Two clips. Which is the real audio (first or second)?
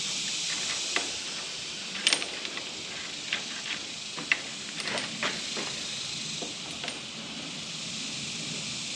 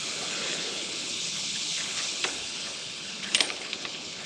first